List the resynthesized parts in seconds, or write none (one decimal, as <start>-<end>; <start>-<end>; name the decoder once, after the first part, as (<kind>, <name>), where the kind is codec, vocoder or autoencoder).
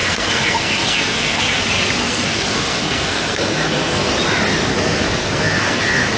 0.0-1.6 (codec, SNAC); 2.0-4.1; 4.7-5.8